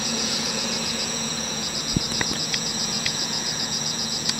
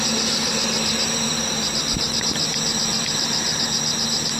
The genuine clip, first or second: second